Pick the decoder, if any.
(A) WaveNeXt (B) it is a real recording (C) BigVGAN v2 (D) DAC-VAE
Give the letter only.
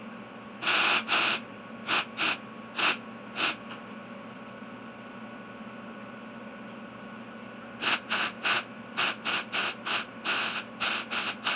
B